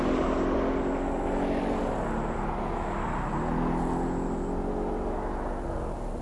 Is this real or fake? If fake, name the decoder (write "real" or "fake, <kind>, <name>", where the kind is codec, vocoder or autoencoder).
real